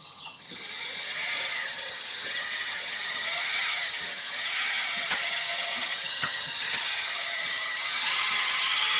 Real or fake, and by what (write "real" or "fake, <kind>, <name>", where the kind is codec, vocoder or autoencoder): fake, vocoder, HiFi-GAN